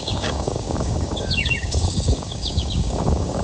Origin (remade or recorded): remade